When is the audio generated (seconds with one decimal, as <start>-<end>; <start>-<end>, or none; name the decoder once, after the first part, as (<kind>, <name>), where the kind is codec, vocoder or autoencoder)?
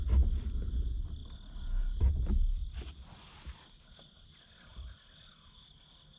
none